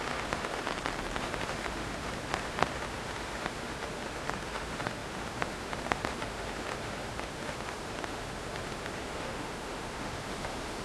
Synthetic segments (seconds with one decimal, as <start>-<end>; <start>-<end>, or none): 0.0-0.7; 1.2-10.8